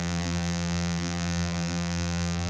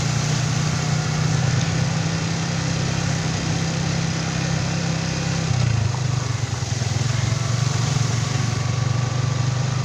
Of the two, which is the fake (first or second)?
first